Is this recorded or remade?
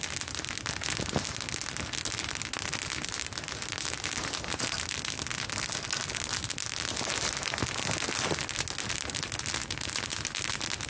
recorded